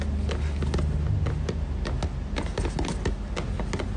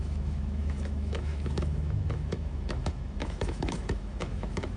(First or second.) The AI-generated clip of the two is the second